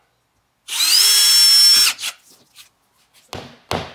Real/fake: real